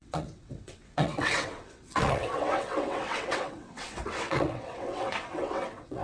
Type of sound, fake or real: fake